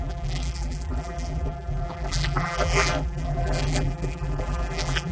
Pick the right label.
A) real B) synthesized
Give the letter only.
B